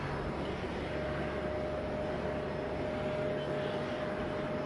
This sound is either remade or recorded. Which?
recorded